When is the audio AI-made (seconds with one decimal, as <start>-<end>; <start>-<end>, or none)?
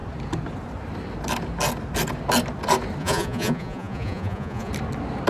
3.0-4.7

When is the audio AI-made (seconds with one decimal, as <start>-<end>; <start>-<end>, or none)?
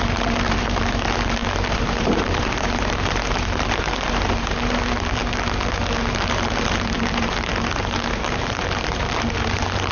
0.0-5.2; 6.3-9.9